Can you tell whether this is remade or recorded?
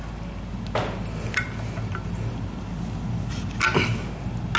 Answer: recorded